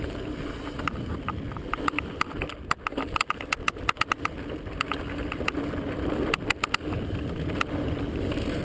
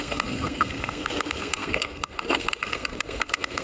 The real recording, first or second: first